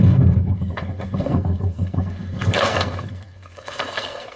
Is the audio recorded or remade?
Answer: remade